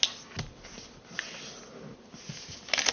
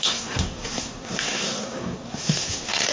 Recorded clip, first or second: first